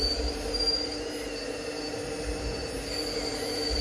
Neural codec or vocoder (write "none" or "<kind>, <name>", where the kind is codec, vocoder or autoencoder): none